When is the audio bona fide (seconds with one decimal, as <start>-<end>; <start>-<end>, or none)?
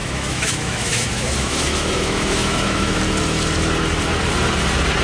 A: 3.0-5.0